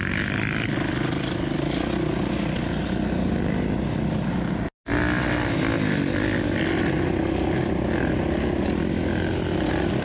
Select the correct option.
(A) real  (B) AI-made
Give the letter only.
A